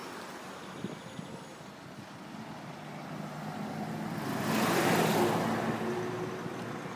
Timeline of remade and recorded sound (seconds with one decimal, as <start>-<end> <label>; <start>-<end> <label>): 0.0-1.7 remade; 1.7-7.0 recorded